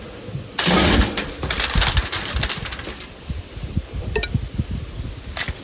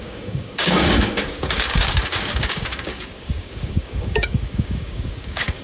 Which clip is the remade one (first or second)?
second